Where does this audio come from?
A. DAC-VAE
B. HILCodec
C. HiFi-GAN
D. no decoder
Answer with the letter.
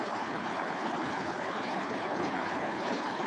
B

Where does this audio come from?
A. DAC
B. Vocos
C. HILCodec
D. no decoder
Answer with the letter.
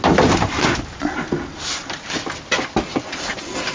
D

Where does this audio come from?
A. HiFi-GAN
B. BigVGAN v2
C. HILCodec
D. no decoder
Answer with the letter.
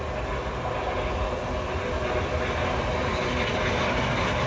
D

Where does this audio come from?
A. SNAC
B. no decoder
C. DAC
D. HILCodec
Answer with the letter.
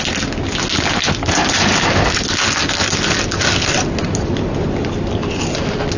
B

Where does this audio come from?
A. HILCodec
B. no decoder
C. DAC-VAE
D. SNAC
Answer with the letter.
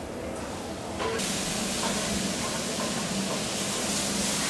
B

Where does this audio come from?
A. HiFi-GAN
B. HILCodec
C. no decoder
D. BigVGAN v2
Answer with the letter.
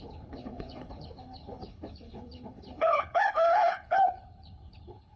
B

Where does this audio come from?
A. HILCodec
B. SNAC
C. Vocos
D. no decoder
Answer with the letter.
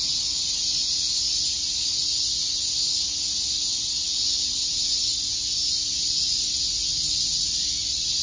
D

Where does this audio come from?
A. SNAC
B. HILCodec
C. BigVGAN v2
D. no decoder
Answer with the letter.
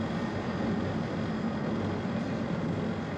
D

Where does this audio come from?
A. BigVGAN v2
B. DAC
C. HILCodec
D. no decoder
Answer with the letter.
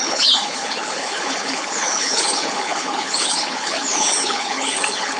C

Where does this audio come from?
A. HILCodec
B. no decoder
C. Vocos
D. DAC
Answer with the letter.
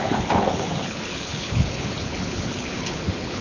A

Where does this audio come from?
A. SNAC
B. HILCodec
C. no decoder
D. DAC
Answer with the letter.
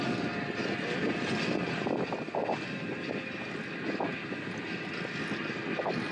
C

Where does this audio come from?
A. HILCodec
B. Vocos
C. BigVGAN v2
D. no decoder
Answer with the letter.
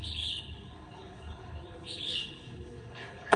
A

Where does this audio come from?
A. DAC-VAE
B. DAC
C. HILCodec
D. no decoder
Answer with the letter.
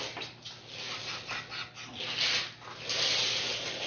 D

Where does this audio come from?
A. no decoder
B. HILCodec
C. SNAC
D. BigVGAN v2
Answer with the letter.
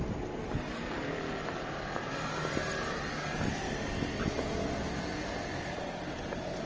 A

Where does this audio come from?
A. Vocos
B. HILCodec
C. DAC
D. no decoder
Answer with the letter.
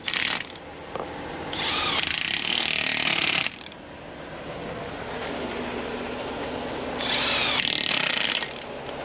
D